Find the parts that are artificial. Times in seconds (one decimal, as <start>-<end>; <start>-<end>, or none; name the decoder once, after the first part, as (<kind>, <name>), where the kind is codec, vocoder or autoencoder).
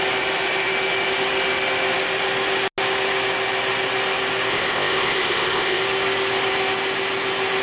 4.5-5.8 (codec, ZipCodec)